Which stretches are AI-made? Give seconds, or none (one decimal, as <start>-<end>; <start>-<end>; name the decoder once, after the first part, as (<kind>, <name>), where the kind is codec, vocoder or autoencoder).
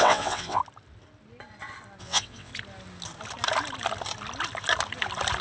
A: 0.0-0.6 (vocoder, WaveNeXt); 2.0-2.5